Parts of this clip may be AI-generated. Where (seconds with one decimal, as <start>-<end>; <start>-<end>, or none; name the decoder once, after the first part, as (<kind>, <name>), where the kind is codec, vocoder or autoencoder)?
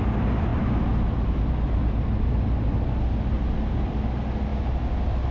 none